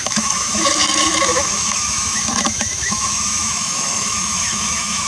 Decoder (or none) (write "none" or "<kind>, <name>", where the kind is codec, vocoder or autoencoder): autoencoder, DAC-VAE